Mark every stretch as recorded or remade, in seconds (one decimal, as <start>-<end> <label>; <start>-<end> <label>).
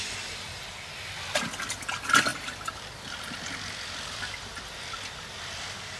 0.0-6.0 recorded